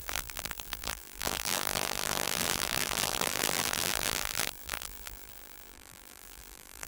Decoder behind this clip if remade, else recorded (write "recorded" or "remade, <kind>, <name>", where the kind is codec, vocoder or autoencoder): remade, vocoder, BigVGAN v2